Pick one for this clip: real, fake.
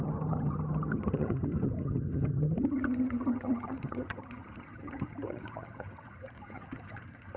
fake